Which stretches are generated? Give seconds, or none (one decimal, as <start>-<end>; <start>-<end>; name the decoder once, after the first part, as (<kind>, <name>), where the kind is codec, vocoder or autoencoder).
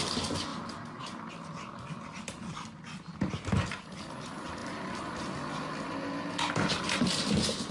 none